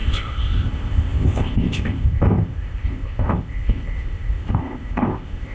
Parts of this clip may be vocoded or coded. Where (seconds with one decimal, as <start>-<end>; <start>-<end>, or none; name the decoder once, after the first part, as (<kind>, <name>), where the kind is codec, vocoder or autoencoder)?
0.0-5.5 (codec, ZipCodec)